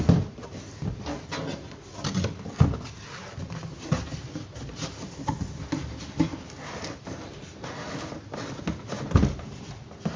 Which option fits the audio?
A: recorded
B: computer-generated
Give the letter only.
A